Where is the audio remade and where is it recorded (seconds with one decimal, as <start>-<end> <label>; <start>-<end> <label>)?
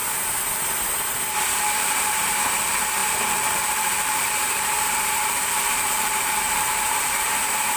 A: 0.0-1.5 recorded; 1.5-7.8 remade